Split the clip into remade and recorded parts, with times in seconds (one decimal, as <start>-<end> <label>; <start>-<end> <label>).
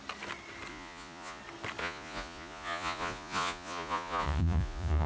0.0-0.7 recorded; 0.7-1.4 remade; 1.4-1.8 recorded; 1.8-5.1 remade